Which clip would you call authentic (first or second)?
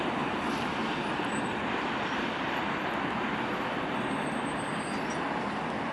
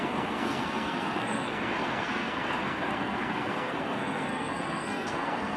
first